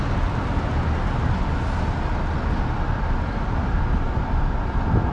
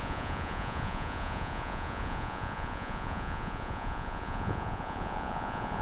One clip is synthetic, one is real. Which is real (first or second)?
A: first